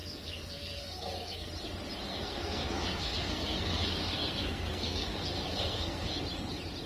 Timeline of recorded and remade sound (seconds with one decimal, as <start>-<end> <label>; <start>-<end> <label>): 0.0-1.5 remade; 1.5-2.1 recorded; 2.1-6.2 remade; 6.2-6.9 recorded